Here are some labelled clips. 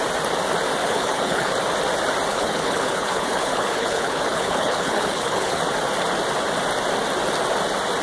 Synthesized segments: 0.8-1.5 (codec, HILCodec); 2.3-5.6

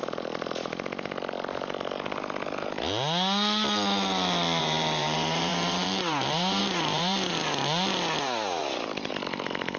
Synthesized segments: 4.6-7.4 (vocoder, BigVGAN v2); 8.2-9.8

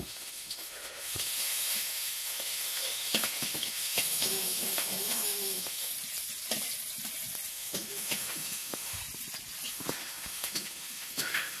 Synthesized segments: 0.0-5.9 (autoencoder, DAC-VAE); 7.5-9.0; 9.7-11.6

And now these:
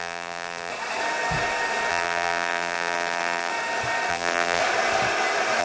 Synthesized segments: 0.0-0.7 (vocoder, BigVGAN v2); 1.9-3.5; 4.1-4.6